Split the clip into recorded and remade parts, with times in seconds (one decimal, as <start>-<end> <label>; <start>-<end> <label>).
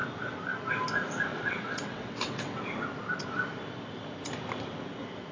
0.0-1.3 recorded; 1.3-2.6 remade; 2.6-5.3 recorded